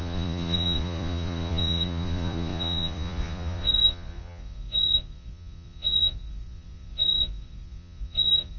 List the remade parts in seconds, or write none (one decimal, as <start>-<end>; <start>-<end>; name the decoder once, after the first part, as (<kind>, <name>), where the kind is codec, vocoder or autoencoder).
0.0-8.6 (vocoder, Vocos)